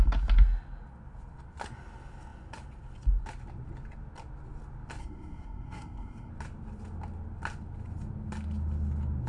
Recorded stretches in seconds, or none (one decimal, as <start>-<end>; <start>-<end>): 0.0-5.0; 6.3-9.3